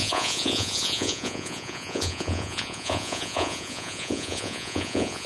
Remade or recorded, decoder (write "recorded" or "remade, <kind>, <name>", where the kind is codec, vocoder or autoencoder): remade, vocoder, Vocos